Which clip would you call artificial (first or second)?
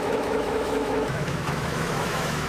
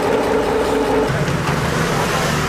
first